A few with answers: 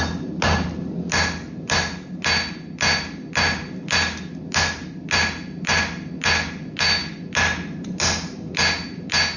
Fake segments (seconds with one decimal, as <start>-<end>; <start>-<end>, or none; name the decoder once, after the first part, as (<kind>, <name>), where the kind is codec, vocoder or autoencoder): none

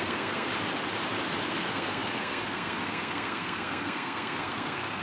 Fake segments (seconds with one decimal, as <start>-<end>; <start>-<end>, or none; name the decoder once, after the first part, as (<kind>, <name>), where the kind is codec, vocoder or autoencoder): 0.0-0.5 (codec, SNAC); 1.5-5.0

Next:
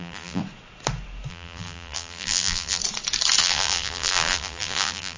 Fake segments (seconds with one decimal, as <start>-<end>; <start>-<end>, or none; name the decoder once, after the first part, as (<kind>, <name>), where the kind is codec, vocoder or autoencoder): 0.0-0.4 (vocoder, BigVGAN v2); 1.3-2.8; 3.4-5.2

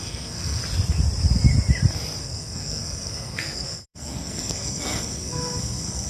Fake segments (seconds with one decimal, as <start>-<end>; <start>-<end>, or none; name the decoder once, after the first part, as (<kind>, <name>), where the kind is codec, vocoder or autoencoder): 0.0-0.6 (codec, SNAC); 2.2-6.1

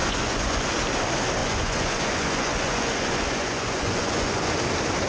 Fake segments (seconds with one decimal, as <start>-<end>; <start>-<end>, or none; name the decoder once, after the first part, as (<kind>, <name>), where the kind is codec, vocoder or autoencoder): 0.0-0.7 (vocoder, Vocos); 1.4-4.5